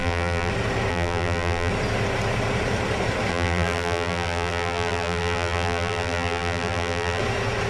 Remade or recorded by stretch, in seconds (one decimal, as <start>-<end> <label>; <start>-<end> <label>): 0.0-0.5 remade; 0.5-0.9 recorded; 0.9-1.7 remade; 1.7-3.3 recorded; 3.3-7.2 remade; 7.2-7.7 recorded